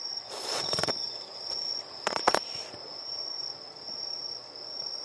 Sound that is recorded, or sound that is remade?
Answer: remade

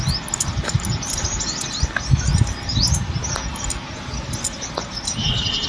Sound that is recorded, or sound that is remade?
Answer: recorded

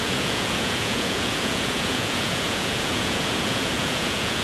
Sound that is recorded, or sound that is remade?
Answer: remade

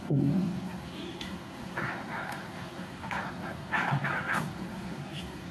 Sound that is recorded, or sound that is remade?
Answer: remade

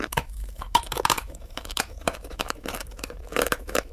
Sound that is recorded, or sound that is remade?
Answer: remade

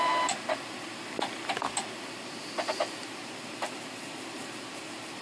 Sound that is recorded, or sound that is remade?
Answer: recorded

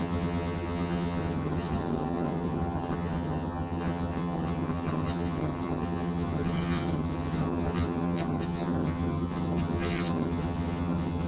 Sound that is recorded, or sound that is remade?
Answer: remade